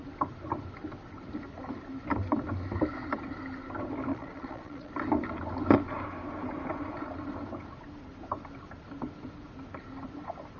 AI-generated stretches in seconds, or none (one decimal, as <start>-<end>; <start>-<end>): 4.1-4.9